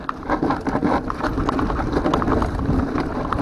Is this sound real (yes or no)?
yes